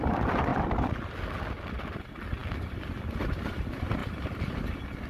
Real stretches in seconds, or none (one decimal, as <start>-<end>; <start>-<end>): 0.0-5.1